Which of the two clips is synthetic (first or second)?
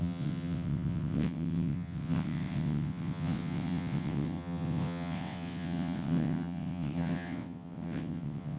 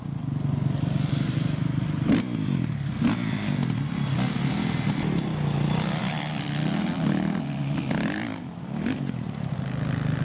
first